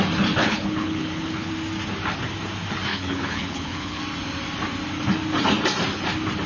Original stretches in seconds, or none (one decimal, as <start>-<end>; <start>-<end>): 0.0-0.4; 1.5-2.9; 4.0-6.5